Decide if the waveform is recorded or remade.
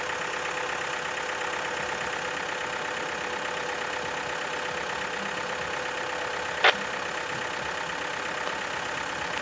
recorded